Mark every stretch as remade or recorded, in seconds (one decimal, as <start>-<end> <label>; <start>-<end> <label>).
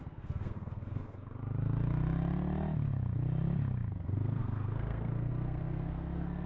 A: 0.0-1.4 remade; 1.4-3.9 recorded; 3.9-6.5 remade